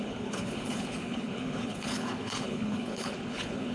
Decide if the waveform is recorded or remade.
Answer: remade